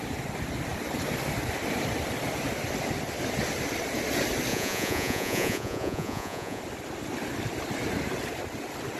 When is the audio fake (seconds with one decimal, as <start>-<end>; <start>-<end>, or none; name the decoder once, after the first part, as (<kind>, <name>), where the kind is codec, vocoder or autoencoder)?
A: 4.5-6.6 (vocoder, Vocos)